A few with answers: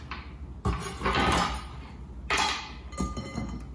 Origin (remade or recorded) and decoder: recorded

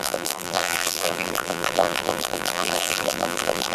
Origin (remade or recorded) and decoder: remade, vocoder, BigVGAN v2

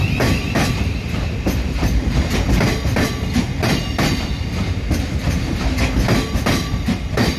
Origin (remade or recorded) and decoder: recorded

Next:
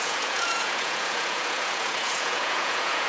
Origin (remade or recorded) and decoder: remade, vocoder, Vocos